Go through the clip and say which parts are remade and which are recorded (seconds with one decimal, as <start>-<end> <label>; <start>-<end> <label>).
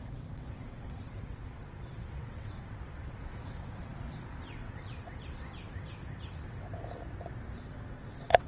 0.0-6.7 remade; 6.7-7.7 recorded; 7.7-8.5 remade